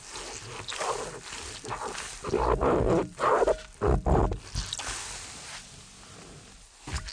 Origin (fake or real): real